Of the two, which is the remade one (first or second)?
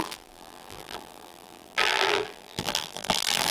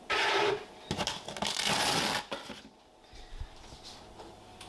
first